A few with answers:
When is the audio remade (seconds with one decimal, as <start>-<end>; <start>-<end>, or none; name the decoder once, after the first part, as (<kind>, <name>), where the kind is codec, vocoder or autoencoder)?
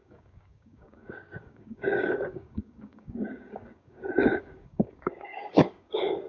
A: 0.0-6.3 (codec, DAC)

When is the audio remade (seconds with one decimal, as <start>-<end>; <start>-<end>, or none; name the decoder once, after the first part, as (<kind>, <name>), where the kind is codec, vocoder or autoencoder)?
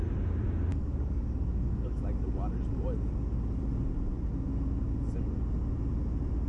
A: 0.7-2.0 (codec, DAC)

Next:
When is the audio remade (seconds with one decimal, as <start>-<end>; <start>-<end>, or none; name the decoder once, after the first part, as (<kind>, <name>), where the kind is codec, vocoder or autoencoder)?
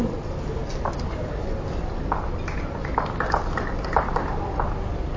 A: none